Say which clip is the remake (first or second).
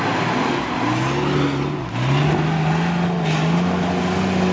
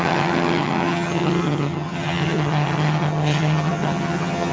second